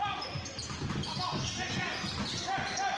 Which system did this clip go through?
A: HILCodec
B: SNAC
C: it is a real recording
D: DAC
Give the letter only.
C